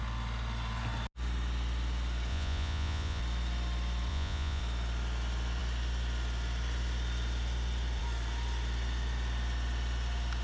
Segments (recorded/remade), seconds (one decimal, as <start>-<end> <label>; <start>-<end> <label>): 0.0-2.3 recorded; 2.3-3.2 remade; 3.2-4.1 recorded; 4.1-4.6 remade; 4.6-10.4 recorded

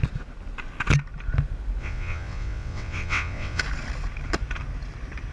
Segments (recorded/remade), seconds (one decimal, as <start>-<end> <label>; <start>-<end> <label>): 0.0-1.8 recorded; 1.8-3.6 remade; 3.6-5.3 recorded